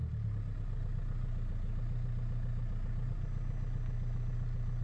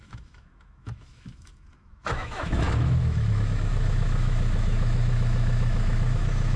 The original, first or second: first